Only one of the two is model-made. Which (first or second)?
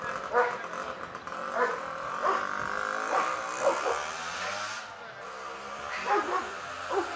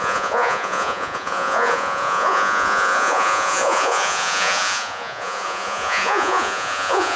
second